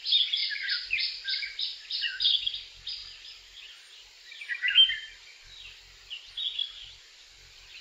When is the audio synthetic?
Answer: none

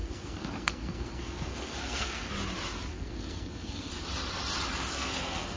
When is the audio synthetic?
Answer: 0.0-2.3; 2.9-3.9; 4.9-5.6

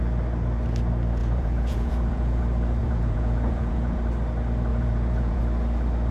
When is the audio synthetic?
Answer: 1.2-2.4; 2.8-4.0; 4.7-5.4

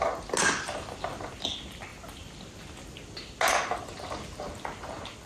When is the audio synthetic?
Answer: none

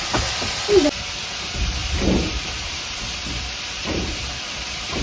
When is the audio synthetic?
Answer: 1.8-5.0

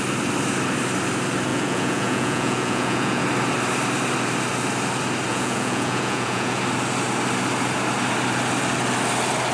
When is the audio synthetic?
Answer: 1.5-3.2; 5.3-6.6

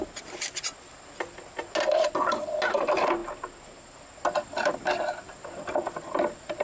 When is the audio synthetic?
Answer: none